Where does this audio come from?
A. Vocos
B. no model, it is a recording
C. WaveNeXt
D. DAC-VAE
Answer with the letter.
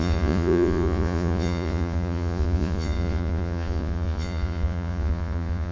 A